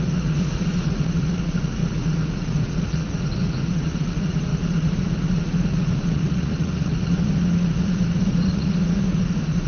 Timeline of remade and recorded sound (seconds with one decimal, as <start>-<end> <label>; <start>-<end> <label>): 0.0-9.7 remade

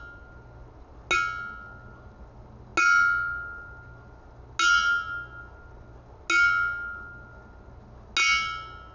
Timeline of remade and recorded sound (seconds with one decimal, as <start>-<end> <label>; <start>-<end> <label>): 0.0-8.9 recorded

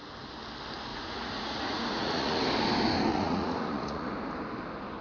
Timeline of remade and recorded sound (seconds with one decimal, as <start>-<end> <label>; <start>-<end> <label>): 0.0-0.9 recorded; 0.9-2.4 remade; 2.4-3.1 recorded; 3.1-4.1 remade; 4.1-5.0 recorded

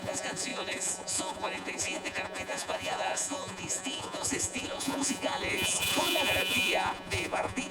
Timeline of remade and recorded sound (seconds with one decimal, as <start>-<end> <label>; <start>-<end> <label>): 0.0-7.7 remade

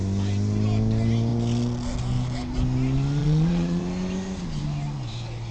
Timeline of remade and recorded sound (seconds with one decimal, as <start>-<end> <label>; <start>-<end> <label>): 0.0-3.2 recorded; 3.2-3.8 remade; 3.8-5.5 recorded

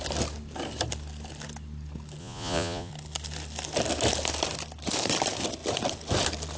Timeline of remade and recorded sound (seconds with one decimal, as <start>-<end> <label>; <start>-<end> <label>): 0.0-2.2 recorded; 2.2-2.9 remade; 2.9-6.6 recorded

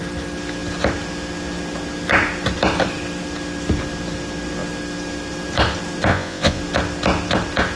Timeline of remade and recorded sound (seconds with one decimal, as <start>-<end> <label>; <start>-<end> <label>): 0.0-6.1 recorded; 6.1-6.6 remade; 6.6-7.8 recorded